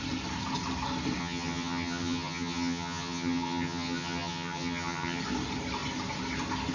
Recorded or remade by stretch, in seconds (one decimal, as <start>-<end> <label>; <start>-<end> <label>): 0.0-1.2 recorded; 1.2-5.2 remade; 5.2-6.7 recorded